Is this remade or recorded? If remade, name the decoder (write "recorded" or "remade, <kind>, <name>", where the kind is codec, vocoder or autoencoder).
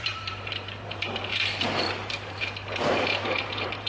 remade, vocoder, BigVGAN v2